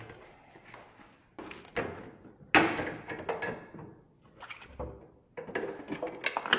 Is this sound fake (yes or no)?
no